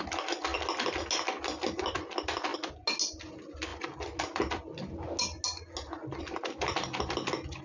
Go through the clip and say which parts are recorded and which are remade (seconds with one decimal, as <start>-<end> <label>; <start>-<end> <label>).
0.0-7.6 recorded